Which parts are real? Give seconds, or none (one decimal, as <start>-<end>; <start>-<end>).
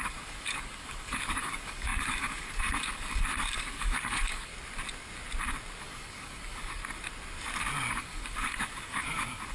4.5-5.8; 6.8-7.9